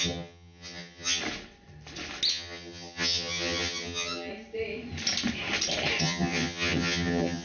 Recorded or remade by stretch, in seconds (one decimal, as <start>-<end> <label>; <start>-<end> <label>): 0.0-1.2 remade; 1.2-2.3 recorded; 2.3-4.3 remade; 4.3-6.0 recorded; 6.0-7.4 remade